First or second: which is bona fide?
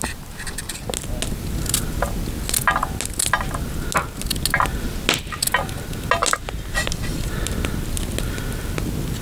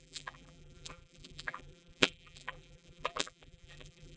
first